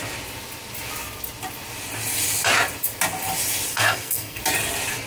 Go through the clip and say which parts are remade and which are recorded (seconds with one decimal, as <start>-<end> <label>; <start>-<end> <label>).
0.0-3.7 recorded; 3.7-4.4 remade; 4.4-5.1 recorded